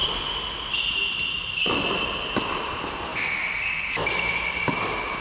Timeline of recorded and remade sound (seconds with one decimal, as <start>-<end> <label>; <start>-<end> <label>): 0.0-5.2 recorded